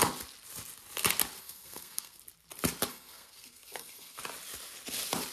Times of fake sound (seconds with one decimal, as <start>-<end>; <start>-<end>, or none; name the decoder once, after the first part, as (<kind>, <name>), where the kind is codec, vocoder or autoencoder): 1.4-2.2 (codec, SNAC); 2.9-4.2